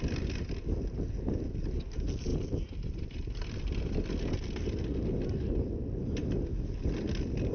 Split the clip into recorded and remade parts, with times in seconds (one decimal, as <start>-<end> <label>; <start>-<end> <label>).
0.0-7.5 recorded